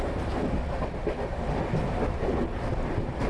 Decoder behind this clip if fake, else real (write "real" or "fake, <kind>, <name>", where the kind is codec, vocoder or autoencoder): real